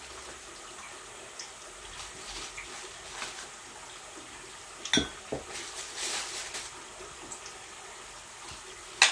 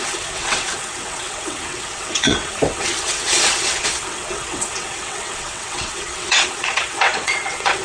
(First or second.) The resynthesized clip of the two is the second